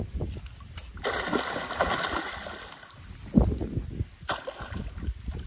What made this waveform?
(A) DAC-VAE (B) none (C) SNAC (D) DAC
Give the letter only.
B